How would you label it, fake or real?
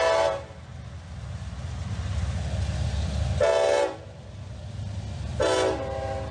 real